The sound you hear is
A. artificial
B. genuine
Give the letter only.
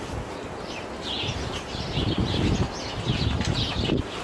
B